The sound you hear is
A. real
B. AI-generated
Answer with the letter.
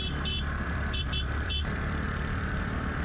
B